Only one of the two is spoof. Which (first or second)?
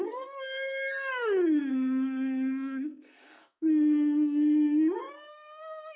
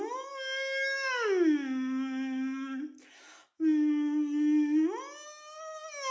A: first